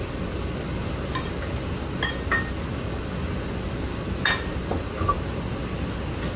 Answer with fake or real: real